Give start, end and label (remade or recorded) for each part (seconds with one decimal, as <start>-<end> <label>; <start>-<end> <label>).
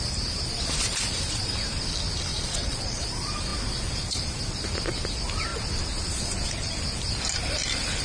0.0-2.3 recorded; 2.3-3.0 remade; 3.0-8.0 recorded